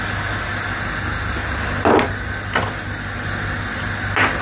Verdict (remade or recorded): recorded